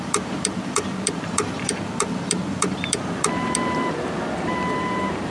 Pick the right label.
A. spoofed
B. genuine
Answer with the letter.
A